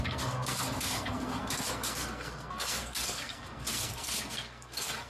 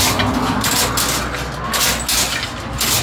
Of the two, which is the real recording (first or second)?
second